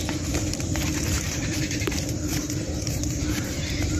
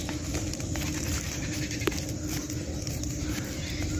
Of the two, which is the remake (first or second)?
first